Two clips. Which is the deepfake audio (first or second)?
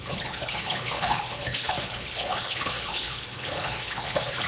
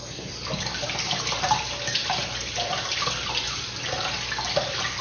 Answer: first